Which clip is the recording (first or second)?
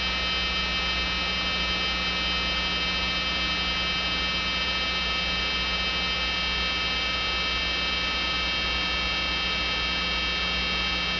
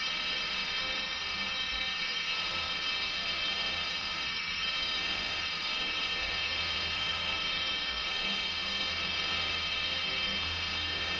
first